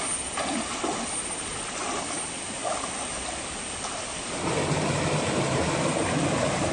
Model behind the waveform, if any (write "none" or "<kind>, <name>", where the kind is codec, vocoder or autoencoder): none